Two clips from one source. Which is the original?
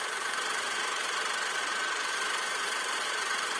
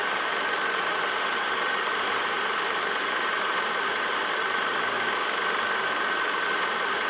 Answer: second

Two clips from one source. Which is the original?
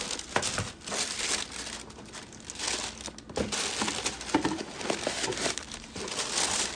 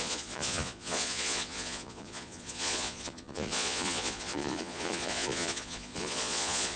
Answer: first